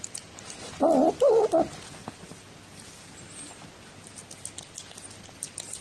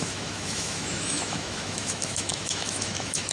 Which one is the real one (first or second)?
first